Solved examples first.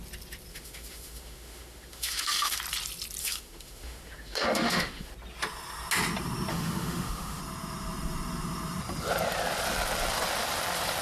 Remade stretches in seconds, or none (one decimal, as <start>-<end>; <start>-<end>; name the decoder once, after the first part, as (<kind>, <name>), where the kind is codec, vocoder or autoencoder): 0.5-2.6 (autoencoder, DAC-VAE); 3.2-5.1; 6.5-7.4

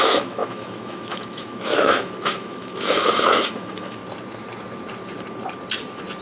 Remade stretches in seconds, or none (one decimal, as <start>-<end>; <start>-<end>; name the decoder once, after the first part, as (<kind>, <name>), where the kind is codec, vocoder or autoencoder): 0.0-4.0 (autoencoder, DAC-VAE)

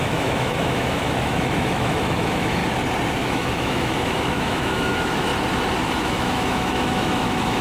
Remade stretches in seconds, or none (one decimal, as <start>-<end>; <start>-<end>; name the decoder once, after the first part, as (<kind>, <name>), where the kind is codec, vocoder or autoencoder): 0.0-2.6 (autoencoder, DAC-VAE); 3.2-5.3; 6.0-7.6

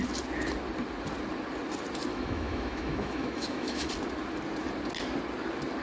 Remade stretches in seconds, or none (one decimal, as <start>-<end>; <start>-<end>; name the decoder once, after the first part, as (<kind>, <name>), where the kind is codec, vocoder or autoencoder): 2.1-3.9 (autoencoder, DAC-VAE)

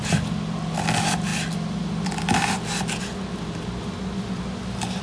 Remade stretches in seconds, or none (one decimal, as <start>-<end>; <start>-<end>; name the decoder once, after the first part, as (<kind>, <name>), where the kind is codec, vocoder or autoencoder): none

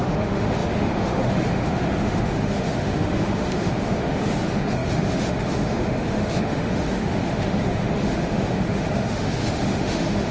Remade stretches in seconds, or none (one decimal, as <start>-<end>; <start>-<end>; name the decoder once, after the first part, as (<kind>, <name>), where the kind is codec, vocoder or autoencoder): 0.0-10.3 (autoencoder, DAC-VAE)

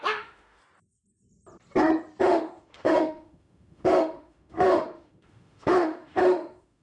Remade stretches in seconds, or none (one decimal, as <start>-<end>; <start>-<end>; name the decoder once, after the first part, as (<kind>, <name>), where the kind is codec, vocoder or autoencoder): 0.0-0.6 (autoencoder, DAC-VAE); 2.2-6.8

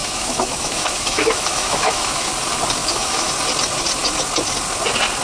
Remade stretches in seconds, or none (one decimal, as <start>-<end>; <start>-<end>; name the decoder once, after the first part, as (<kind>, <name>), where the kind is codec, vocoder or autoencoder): 0.0-2.3 (autoencoder, DAC-VAE); 2.8-3.3